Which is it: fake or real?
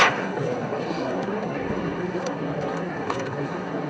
fake